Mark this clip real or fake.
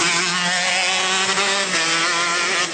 real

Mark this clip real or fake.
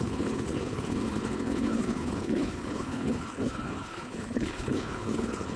fake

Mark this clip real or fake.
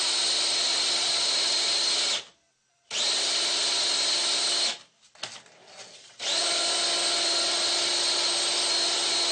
real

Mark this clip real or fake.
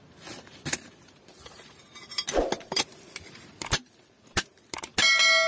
real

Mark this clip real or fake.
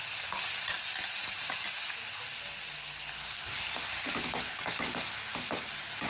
real